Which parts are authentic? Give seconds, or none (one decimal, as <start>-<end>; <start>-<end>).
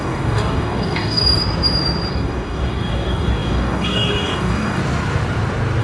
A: 1.2-2.1; 4.8-5.8